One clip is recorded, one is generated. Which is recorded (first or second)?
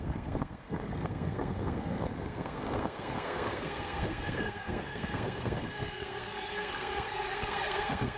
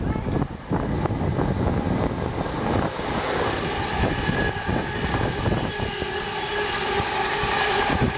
second